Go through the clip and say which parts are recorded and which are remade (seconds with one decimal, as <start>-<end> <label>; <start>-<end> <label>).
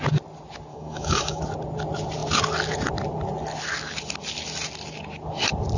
0.0-0.7 recorded; 0.7-1.4 remade; 1.4-5.8 recorded